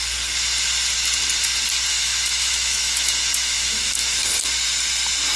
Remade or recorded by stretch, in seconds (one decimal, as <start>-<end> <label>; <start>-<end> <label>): 0.0-1.9 recorded; 1.9-4.2 remade; 4.2-5.4 recorded